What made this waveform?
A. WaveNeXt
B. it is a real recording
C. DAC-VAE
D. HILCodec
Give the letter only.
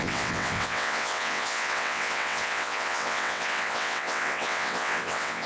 A